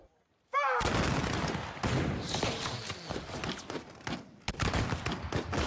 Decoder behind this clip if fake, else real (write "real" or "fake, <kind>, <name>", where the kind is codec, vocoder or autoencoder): real